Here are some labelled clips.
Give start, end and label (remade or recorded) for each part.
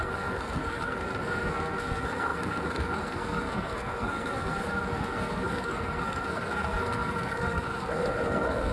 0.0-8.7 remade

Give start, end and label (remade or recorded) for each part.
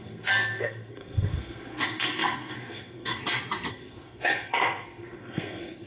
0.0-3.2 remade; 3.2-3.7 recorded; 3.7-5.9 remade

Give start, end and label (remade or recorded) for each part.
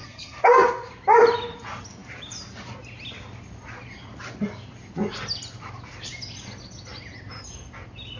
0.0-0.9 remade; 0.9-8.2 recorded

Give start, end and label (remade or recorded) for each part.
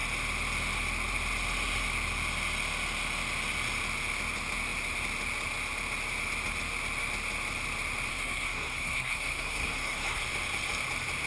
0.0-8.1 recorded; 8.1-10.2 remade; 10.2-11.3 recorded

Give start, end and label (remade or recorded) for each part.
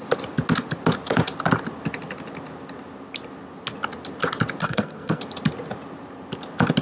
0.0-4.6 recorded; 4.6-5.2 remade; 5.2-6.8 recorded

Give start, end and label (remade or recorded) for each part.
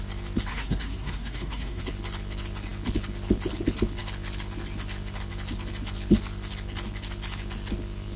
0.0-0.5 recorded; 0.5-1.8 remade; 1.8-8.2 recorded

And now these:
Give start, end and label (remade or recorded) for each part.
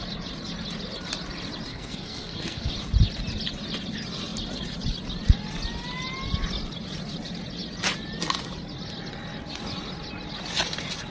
0.0-1.7 recorded; 1.7-2.7 remade; 2.7-11.1 recorded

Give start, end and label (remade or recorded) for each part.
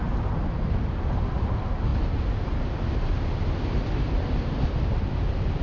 0.0-5.6 recorded